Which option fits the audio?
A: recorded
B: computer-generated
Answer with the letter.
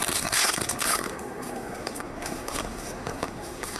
B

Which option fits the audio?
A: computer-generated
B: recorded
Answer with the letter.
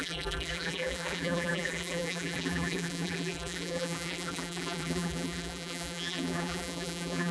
A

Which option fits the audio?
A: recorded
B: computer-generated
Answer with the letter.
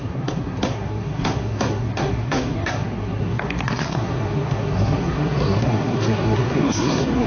B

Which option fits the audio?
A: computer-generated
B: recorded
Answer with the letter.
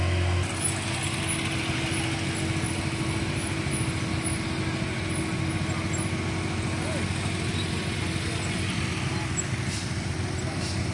B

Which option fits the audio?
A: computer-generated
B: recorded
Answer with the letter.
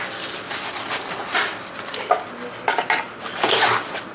B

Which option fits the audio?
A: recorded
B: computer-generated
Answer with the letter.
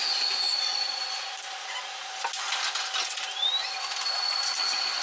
A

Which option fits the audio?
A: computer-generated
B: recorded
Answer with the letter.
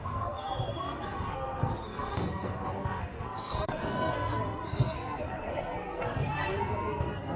A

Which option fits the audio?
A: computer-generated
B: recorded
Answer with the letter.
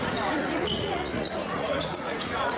A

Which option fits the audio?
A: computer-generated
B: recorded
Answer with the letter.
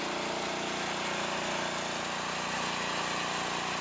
B